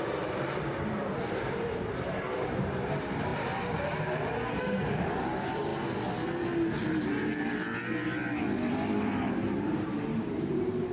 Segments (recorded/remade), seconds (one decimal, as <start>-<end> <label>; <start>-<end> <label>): 0.0-5.7 remade; 5.7-8.7 recorded; 8.7-10.9 remade